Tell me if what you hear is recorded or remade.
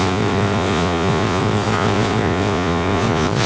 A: remade